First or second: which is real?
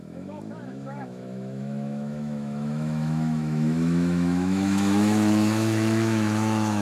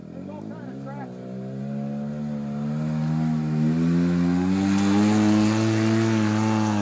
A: second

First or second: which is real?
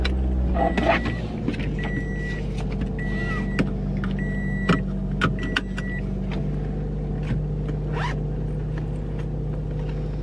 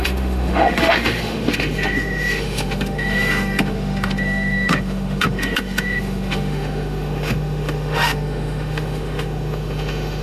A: first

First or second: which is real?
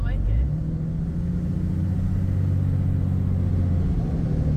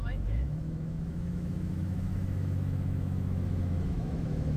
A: first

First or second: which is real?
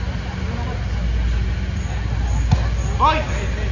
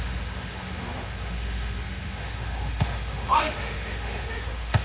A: first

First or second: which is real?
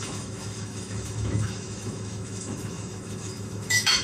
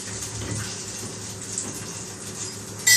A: second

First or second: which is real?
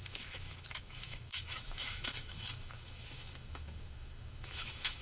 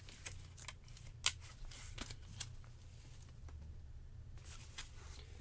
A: second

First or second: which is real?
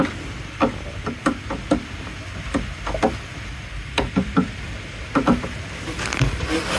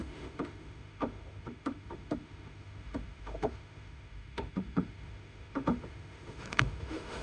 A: first